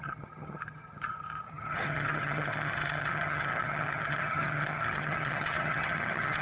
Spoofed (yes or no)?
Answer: yes